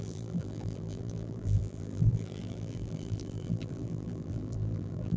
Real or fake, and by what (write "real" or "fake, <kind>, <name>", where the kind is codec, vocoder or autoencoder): fake, vocoder, BigVGAN v2